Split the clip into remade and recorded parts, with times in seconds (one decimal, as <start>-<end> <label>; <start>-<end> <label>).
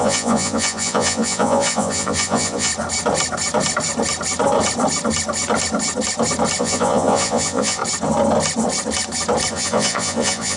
0.0-2.7 remade; 2.7-6.6 recorded; 6.6-7.8 remade; 7.8-9.5 recorded; 9.5-10.6 remade